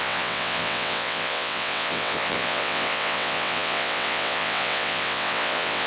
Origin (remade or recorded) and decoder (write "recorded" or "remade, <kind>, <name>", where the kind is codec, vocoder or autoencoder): remade, vocoder, WaveNeXt